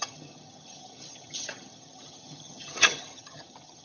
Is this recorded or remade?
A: remade